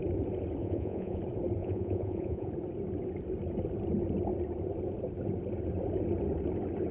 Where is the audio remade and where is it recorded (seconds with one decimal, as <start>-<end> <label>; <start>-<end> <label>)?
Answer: 0.0-0.6 recorded; 0.6-1.2 remade; 1.2-1.6 recorded; 1.6-2.5 remade; 2.5-6.9 recorded